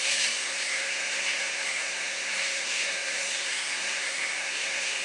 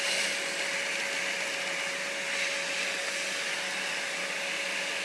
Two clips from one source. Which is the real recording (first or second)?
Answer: second